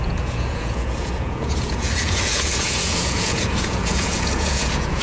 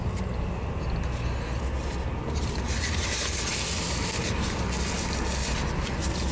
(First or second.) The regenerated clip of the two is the first